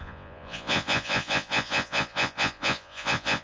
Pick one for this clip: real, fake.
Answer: fake